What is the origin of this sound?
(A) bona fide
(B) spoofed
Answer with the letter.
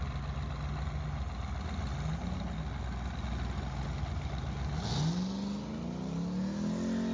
A